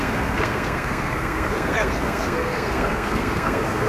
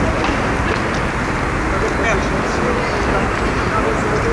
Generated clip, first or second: first